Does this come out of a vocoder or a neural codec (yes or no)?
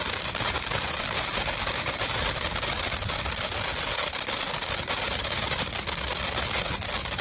no